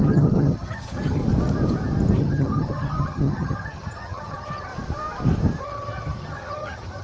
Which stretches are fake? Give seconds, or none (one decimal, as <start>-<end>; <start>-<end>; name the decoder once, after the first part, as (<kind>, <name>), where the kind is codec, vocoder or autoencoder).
0.0-1.2 (vocoder, HiFi-GAN); 2.2-4.7; 5.6-7.0